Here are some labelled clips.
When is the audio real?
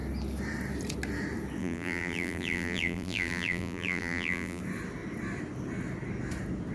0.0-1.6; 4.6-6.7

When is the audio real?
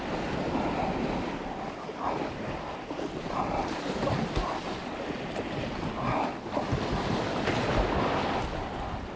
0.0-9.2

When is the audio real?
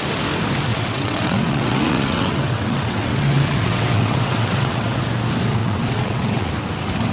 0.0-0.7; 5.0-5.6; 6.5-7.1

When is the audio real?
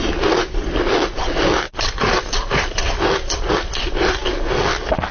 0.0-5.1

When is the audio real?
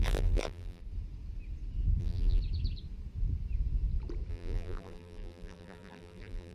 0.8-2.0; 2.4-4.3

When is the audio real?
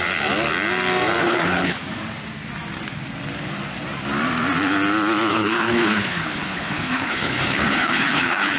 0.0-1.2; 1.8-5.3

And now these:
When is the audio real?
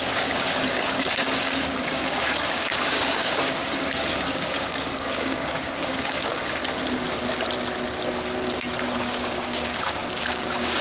6.6-9.0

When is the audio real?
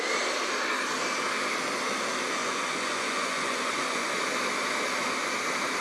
0.0-2.4; 4.1-5.8